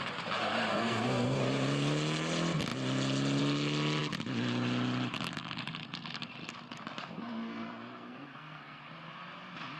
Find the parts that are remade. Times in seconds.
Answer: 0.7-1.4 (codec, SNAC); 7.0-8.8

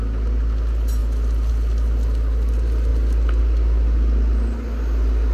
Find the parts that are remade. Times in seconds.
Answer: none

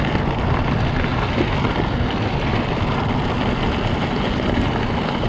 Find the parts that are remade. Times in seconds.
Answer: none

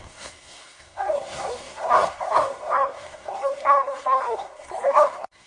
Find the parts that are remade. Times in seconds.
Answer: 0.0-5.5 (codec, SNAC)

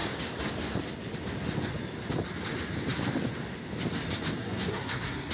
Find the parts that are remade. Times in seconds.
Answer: 4.4-5.3 (codec, SNAC)

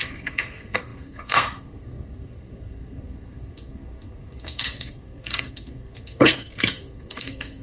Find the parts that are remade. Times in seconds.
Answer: 0.0-7.6 (codec, SNAC)

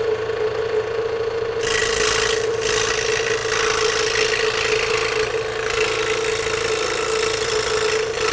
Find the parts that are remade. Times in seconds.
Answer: none

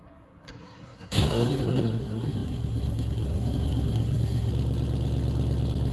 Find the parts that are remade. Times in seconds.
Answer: 0.0-4.5 (codec, SNAC)